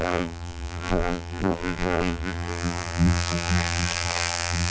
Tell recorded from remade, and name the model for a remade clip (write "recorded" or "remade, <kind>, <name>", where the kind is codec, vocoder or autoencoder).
remade, vocoder, BigVGAN v2